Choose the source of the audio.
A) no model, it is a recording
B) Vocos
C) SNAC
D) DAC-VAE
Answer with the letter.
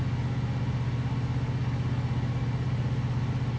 A